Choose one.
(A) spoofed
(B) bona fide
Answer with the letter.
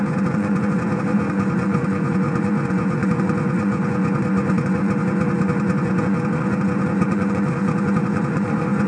A